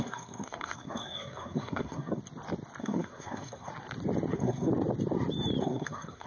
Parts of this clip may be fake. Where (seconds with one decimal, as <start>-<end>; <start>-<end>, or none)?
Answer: 0.0-2.2; 2.8-3.7; 4.3-4.7; 5.6-6.3